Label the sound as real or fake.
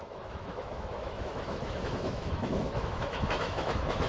fake